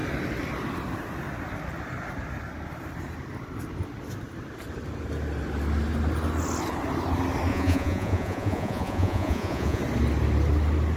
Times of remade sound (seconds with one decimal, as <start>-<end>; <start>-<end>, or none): 7.5-9.8